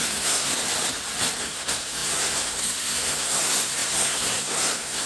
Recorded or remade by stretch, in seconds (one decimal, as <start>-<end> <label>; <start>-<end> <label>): 0.0-0.6 remade; 0.6-1.4 recorded; 1.4-5.1 remade